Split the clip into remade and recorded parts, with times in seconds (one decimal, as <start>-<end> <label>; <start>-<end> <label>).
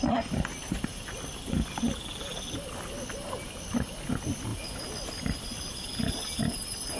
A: 0.0-7.0 recorded